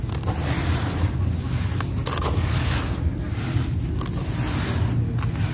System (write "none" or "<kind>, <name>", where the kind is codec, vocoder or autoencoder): none